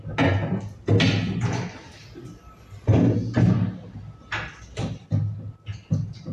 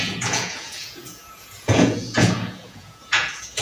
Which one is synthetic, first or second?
second